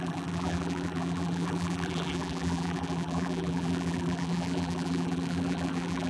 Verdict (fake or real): fake